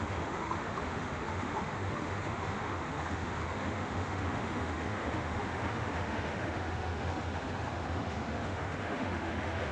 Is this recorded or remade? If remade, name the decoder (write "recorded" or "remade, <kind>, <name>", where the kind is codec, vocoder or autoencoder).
remade, autoencoder, DAC-VAE